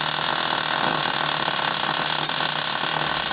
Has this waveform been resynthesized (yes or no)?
no